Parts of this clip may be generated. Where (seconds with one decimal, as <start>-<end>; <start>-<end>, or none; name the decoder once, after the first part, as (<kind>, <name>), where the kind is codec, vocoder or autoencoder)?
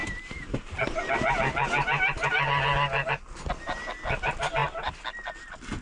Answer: none